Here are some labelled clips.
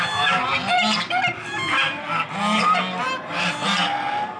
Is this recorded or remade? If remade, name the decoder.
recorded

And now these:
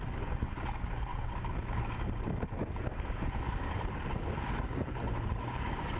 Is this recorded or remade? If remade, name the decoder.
remade, codec, DAC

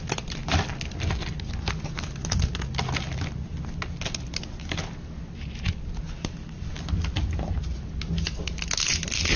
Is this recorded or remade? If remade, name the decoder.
recorded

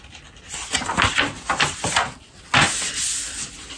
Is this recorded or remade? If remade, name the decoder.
recorded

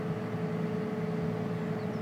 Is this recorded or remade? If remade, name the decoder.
recorded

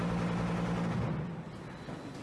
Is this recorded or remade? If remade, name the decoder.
recorded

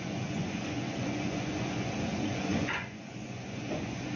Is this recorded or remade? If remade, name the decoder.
remade, vocoder, Vocos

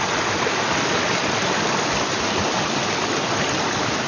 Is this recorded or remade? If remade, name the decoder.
recorded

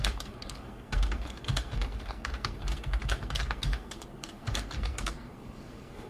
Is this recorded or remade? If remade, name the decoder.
remade, codec, SNAC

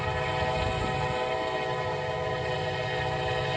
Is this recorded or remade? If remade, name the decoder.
recorded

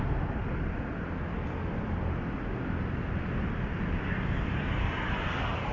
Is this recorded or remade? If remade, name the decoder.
recorded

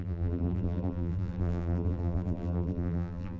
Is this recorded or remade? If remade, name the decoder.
remade, vocoder, BigVGAN v2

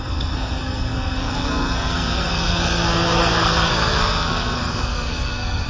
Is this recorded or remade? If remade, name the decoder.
remade, codec, SNAC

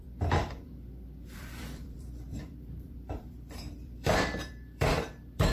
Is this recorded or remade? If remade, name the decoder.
remade, vocoder, BigVGAN v2